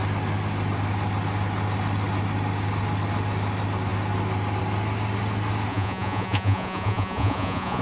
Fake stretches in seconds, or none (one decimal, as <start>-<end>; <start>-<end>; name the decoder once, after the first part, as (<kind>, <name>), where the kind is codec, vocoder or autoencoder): 5.7-7.8 (vocoder, Vocos)